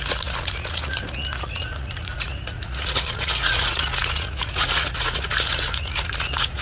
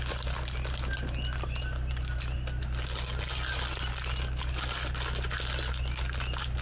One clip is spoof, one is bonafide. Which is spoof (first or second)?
first